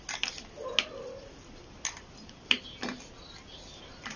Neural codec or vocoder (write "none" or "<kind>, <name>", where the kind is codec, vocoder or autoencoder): none